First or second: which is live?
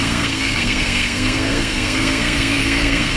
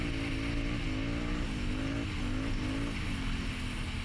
second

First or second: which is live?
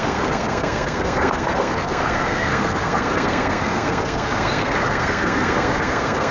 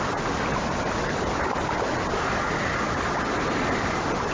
second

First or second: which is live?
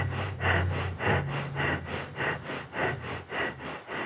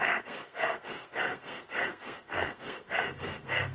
first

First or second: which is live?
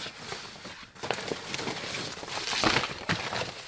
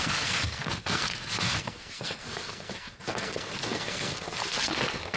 first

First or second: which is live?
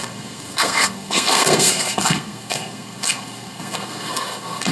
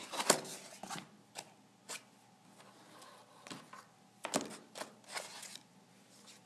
second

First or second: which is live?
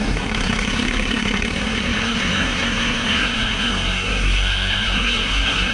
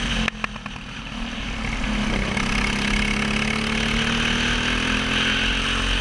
second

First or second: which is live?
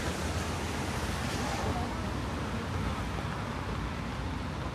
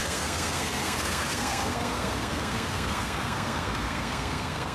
first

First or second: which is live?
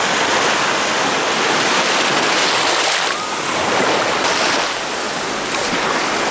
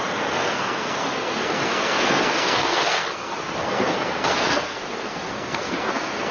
first